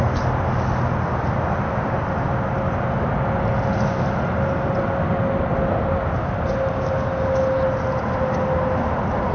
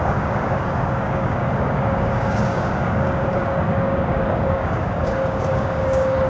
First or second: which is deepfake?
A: second